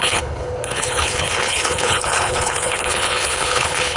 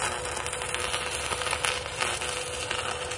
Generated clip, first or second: first